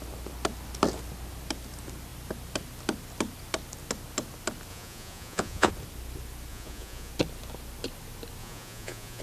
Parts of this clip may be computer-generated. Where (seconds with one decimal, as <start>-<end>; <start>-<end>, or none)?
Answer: 4.7-5.7; 6.5-7.1; 8.4-9.2